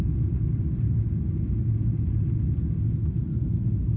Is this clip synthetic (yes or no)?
no